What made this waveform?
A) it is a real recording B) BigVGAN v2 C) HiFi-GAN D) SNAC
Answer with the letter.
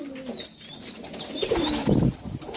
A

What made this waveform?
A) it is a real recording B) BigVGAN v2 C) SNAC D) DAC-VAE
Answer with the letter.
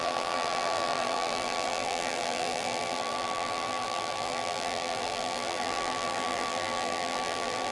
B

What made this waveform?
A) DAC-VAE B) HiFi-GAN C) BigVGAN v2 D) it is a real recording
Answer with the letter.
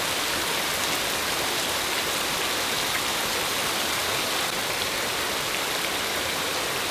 D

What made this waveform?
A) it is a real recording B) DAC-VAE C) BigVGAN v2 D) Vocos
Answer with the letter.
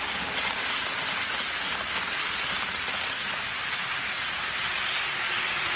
A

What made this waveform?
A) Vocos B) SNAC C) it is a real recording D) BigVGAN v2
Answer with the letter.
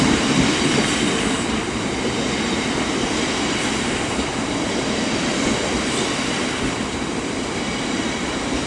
D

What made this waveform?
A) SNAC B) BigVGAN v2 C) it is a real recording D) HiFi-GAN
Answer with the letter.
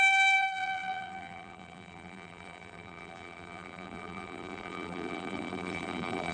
B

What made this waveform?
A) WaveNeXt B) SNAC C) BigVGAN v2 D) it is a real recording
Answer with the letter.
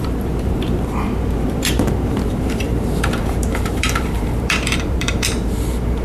C